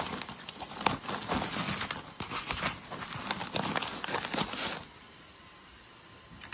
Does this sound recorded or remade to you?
recorded